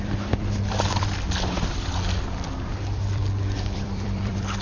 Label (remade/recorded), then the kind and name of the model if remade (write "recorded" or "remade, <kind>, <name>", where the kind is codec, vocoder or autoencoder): remade, vocoder, BigVGAN v2